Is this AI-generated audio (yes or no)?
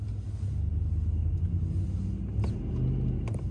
no